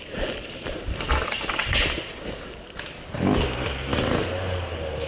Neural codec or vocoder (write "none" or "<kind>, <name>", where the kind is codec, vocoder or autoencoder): none